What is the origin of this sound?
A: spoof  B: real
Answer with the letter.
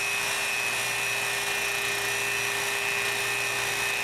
B